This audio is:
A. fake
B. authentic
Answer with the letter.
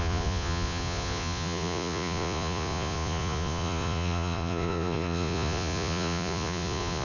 A